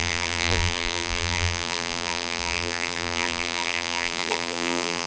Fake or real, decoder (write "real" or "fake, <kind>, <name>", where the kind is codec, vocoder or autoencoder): fake, vocoder, BigVGAN v2